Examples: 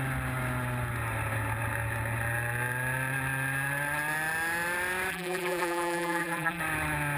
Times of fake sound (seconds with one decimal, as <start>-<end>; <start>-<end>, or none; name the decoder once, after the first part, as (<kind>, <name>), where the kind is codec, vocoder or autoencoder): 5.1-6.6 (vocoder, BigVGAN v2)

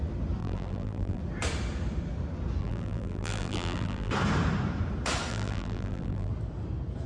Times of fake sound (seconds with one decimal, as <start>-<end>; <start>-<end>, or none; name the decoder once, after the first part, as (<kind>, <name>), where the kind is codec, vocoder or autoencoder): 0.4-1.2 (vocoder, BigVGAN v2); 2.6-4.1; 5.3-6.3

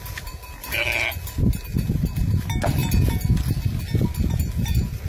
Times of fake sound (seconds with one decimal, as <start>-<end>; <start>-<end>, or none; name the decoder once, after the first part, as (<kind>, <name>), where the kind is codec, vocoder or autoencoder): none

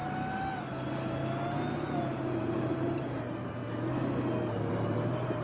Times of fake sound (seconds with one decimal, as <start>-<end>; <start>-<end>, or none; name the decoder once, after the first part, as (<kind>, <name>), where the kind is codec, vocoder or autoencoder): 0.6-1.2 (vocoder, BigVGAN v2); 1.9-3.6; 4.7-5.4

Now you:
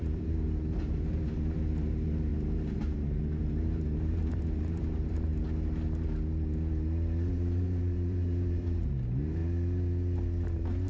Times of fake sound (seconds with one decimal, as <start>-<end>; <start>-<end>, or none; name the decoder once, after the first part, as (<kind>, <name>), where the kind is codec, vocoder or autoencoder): 0.0-5.3 (vocoder, BigVGAN v2); 7.3-9.4

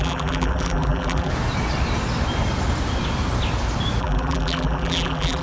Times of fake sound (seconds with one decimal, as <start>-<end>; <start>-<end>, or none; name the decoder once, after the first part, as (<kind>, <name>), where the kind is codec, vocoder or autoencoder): 0.0-1.3 (vocoder, BigVGAN v2); 4.0-5.4

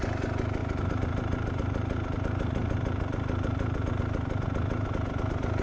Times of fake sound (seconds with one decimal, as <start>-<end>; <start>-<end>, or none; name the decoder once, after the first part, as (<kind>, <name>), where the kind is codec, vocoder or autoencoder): 0.6-4.0 (vocoder, BigVGAN v2)

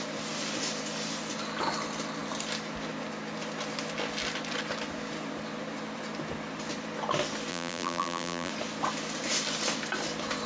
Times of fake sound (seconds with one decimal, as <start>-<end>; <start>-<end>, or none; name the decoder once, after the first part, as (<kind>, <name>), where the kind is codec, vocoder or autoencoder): 7.5-8.5 (vocoder, BigVGAN v2)